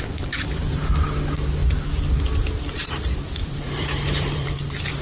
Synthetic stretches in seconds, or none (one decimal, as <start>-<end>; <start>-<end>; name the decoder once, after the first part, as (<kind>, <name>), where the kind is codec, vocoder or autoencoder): 0.0-1.6 (vocoder, BigVGAN v2); 2.6-5.0